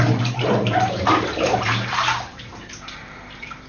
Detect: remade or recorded remade